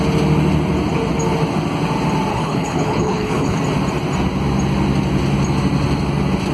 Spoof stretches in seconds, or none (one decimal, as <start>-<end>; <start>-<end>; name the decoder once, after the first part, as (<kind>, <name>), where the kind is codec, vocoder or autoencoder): 2.3-3.6 (codec, HILCodec)